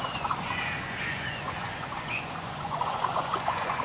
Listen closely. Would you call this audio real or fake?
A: fake